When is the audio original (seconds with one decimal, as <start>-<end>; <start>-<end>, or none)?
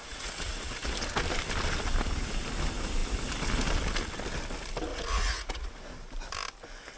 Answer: 0.9-4.9; 5.7-7.0